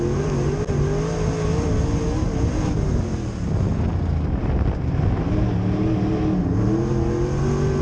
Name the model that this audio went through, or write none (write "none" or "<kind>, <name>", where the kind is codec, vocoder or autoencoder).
none